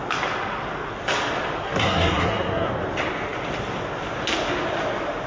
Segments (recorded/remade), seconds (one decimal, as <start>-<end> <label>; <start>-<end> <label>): 0.0-1.6 recorded; 1.6-2.7 remade; 2.7-5.3 recorded